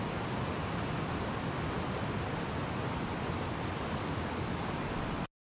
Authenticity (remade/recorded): recorded